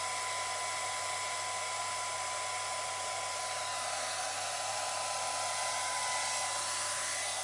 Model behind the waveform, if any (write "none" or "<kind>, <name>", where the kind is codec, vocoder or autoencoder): none